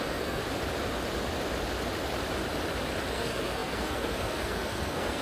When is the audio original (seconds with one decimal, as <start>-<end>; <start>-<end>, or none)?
0.4-3.1